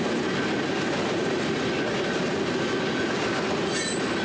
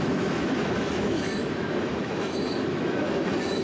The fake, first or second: second